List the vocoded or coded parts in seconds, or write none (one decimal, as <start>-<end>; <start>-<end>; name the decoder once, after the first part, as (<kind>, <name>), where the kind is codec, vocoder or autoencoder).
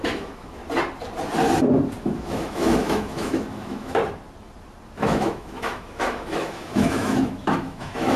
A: 0.0-0.6 (autoencoder, DAC-VAE); 2.0-4.0; 5.0-8.2